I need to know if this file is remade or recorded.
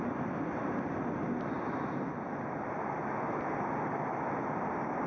recorded